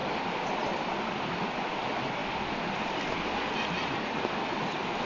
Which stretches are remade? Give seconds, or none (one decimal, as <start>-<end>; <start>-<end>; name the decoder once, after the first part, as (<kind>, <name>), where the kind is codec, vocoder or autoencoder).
none